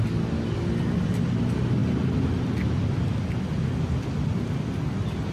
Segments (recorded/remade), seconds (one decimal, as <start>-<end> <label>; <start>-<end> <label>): 0.0-5.3 recorded